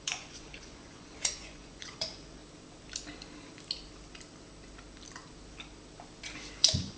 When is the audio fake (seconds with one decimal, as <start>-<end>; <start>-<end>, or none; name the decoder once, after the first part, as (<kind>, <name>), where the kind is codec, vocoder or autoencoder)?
0.0-2.4 (vocoder, Vocos); 6.6-7.0